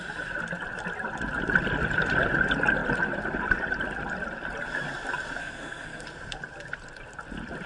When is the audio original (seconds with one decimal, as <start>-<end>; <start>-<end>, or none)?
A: 0.0-5.4; 6.0-7.7